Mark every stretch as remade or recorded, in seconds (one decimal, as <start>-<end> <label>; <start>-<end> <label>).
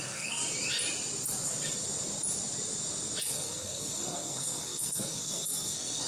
0.0-0.4 remade; 0.4-3.2 recorded; 3.2-6.1 remade